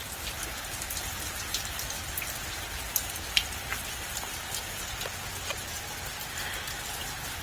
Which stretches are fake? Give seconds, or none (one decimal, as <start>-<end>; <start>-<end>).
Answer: none